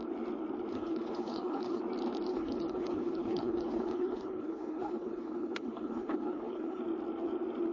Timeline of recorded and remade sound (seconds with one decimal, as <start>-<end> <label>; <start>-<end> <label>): 0.0-0.7 recorded; 0.7-1.8 remade; 1.8-2.3 recorded; 2.3-6.8 remade; 6.8-7.7 recorded